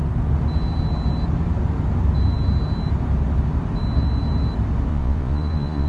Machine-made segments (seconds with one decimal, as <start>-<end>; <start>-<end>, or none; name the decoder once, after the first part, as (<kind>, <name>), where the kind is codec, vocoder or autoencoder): 4.9-5.9 (vocoder, Vocos)